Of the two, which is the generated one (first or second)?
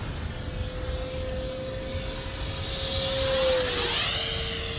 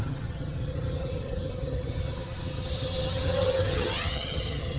second